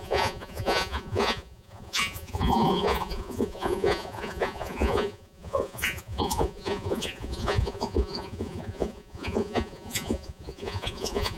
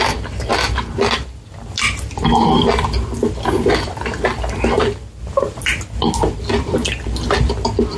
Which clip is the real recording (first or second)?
second